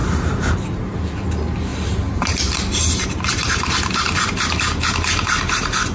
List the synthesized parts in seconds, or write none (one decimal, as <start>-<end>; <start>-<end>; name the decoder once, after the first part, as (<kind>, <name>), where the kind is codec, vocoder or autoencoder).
0.0-0.5 (vocoder, BigVGAN v2); 1.7-3.5

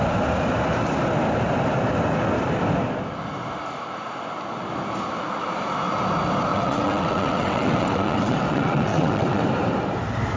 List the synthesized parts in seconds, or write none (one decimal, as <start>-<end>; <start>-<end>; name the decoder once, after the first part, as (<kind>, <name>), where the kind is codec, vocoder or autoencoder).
6.5-9.4 (vocoder, WaveNeXt)

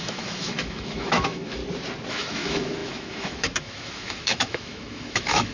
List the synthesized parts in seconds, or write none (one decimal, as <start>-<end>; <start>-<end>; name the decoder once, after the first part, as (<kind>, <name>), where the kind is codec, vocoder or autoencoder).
0.0-1.6 (autoencoder, DAC-VAE); 2.1-5.5

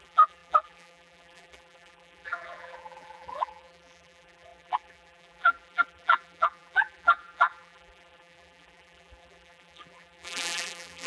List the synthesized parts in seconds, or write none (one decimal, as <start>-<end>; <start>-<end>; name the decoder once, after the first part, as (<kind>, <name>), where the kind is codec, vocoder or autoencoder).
0.0-11.1 (vocoder, BigVGAN v2)

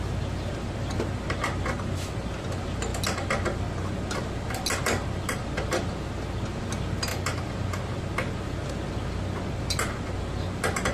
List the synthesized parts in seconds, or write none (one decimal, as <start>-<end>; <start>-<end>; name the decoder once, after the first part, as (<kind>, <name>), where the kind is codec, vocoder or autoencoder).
none